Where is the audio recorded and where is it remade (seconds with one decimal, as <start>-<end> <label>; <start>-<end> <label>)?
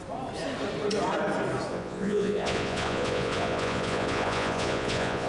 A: 0.0-1.7 recorded; 1.7-5.3 remade